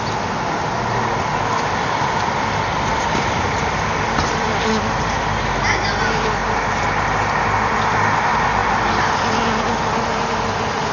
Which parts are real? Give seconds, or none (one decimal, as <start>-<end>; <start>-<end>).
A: 0.0-2.7; 4.5-10.9